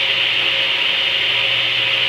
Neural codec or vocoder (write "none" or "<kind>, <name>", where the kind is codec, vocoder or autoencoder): none